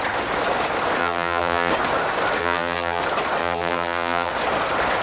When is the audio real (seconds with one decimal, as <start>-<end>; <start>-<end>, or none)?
0.0-1.0; 1.7-2.4; 3.0-3.4; 4.3-5.0